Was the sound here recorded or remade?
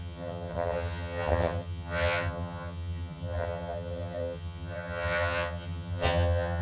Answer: remade